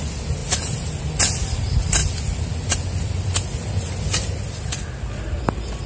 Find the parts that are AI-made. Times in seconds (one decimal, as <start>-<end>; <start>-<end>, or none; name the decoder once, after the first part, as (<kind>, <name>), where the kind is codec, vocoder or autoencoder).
none